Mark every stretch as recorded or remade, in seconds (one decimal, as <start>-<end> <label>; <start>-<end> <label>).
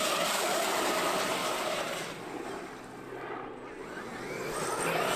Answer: 0.0-5.2 recorded